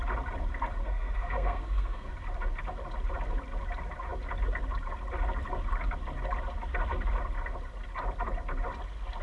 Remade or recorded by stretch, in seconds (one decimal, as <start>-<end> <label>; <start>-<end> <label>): 0.0-0.8 recorded; 0.8-2.1 remade; 2.1-9.2 recorded